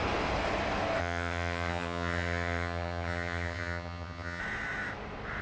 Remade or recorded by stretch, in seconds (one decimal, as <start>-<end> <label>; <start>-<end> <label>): 0.0-1.0 recorded; 1.0-4.4 remade; 4.4-5.4 recorded